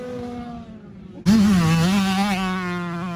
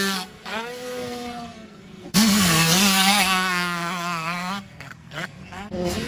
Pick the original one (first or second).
first